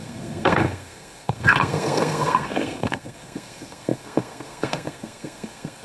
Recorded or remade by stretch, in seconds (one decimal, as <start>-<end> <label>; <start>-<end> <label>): 0.0-5.8 remade